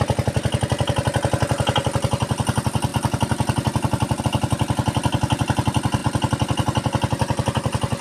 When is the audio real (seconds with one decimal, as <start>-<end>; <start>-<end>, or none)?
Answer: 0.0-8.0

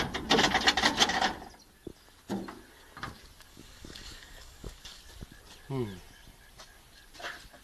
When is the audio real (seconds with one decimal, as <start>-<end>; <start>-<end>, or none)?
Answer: 0.0-3.5; 5.0-7.6

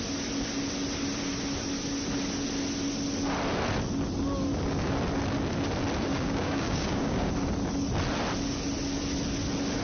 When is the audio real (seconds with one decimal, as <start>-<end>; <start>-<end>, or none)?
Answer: 0.0-6.1; 7.3-9.8

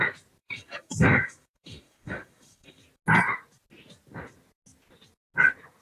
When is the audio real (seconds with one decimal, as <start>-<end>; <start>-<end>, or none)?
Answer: 0.0-0.4; 2.8-5.8